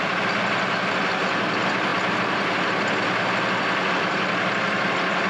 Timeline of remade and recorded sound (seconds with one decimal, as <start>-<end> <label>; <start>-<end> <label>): 0.0-5.3 recorded